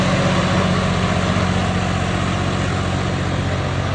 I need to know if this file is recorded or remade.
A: recorded